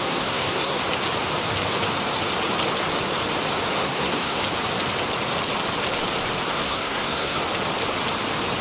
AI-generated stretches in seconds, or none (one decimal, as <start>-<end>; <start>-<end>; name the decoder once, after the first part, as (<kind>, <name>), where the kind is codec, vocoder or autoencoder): 0.0-0.8 (codec, SNAC); 3.8-4.4; 6.5-7.4